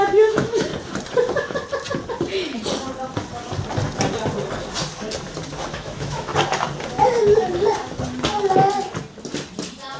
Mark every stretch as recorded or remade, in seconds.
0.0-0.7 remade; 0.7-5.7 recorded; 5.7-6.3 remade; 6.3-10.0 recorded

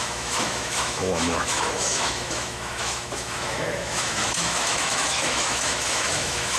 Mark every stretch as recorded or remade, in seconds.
0.0-6.6 remade

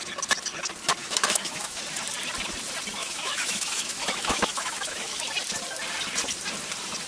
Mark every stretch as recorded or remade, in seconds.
0.0-1.0 recorded; 1.0-1.8 remade; 1.8-3.0 recorded; 3.0-5.2 remade; 5.2-7.1 recorded

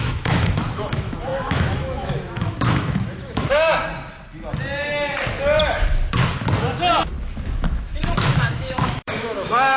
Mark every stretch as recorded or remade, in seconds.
0.0-3.8 remade; 3.8-7.6 recorded; 7.6-9.8 remade

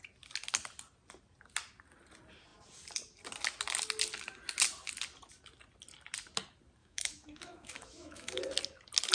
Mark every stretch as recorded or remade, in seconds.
0.0-6.8 recorded; 6.8-8.4 remade; 8.4-9.1 recorded

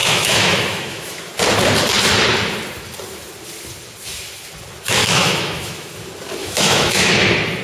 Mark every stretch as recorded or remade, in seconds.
0.0-1.2 remade; 1.2-5.0 recorded; 5.0-5.9 remade; 5.9-6.4 recorded; 6.4-7.1 remade; 7.1-7.6 recorded

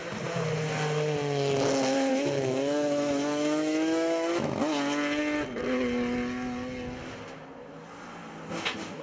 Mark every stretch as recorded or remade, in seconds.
0.0-2.1 recorded; 2.1-4.6 remade; 4.6-9.0 recorded

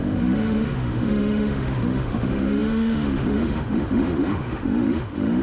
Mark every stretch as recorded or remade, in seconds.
0.0-5.4 remade